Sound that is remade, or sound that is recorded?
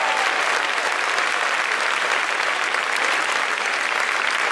recorded